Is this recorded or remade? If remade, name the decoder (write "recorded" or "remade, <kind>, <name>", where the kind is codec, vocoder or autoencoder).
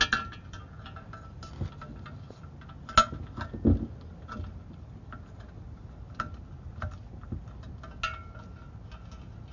recorded